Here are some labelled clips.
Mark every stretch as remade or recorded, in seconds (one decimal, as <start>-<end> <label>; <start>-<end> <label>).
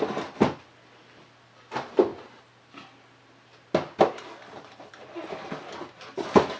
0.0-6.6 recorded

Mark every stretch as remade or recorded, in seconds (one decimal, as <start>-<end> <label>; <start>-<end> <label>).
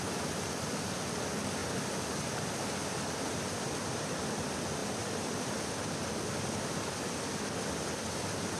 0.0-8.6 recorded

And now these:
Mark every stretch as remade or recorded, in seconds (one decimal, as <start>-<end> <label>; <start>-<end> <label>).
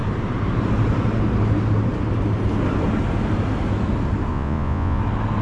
0.0-4.3 recorded; 4.3-5.0 remade; 5.0-5.4 recorded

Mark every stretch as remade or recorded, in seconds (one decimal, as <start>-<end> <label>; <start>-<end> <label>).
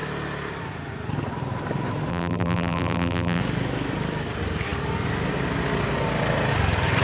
0.0-2.1 recorded; 2.1-3.4 remade; 3.4-7.0 recorded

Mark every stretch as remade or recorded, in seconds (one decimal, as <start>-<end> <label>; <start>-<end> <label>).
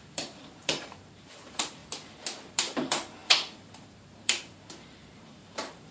0.0-1.8 remade; 1.8-2.5 recorded; 2.5-5.9 remade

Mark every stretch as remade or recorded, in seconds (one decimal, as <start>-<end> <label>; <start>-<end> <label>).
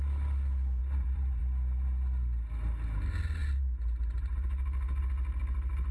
0.0-0.8 recorded; 0.8-1.4 remade; 1.4-3.4 recorded; 3.4-5.0 remade; 5.0-5.9 recorded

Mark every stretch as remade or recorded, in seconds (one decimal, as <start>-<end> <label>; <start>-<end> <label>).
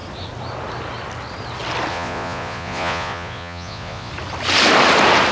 0.0-1.9 recorded; 1.9-4.1 remade; 4.1-5.3 recorded